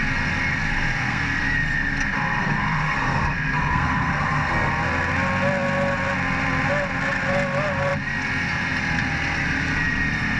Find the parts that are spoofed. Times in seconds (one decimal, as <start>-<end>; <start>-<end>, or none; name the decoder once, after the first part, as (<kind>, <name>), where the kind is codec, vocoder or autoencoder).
0.5-1.4 (codec, SNAC); 2.4-4.7